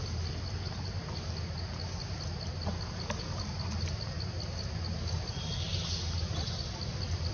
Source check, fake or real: real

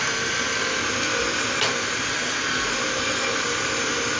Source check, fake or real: real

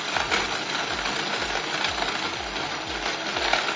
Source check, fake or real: real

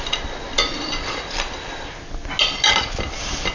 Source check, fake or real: real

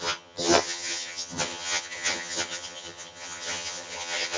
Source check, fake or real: fake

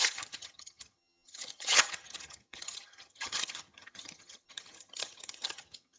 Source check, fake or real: fake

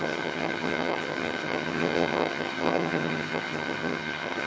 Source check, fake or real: fake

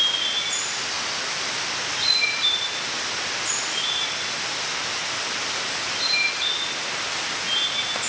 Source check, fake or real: real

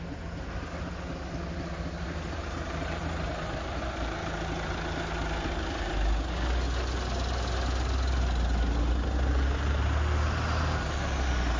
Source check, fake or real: real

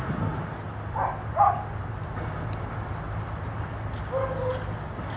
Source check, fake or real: real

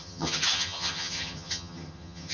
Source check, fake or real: fake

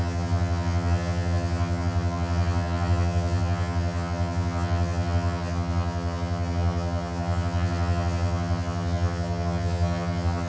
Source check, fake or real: fake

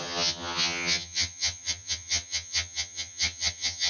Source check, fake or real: fake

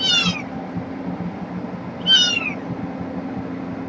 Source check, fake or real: real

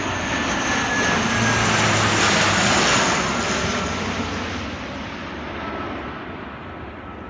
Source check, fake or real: real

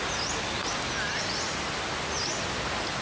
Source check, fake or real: real